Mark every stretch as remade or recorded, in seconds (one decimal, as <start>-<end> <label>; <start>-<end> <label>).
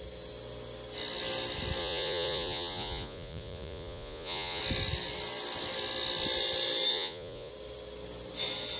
0.0-1.8 recorded; 1.8-4.6 remade; 4.6-6.9 recorded; 6.9-7.5 remade; 7.5-8.8 recorded